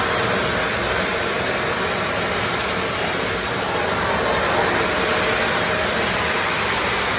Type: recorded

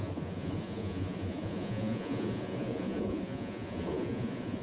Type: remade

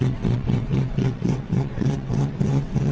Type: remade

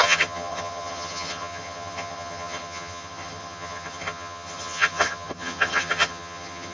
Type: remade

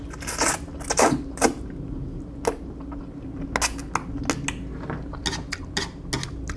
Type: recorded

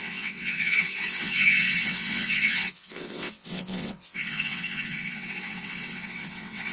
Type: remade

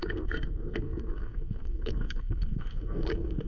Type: remade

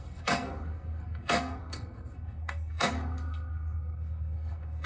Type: remade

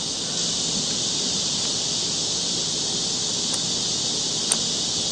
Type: recorded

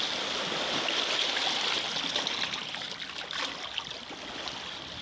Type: recorded